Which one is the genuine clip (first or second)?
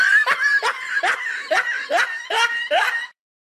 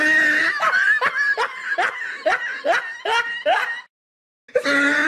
second